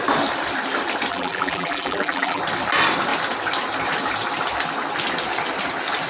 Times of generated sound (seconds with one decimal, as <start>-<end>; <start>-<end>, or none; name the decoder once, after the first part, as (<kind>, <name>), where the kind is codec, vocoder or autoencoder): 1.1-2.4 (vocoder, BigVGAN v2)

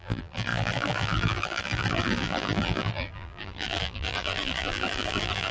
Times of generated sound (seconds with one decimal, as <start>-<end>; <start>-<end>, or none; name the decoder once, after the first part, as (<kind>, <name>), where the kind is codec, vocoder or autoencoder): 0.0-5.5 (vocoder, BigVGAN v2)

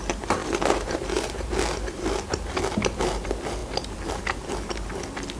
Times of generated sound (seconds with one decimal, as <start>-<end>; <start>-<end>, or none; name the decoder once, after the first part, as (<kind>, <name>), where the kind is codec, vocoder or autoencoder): 0.4-1.5 (vocoder, BigVGAN v2)

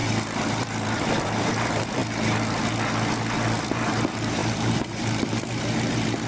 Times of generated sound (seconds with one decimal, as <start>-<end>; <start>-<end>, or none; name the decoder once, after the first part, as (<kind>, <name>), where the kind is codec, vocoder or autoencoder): 0.0-2.0 (vocoder, BigVGAN v2); 3.6-6.3